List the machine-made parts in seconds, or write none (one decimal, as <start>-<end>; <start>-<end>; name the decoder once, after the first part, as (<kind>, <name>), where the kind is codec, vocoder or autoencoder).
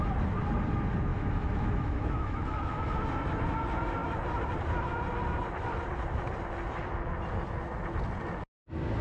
1.1-3.0 (autoencoder, DAC-VAE)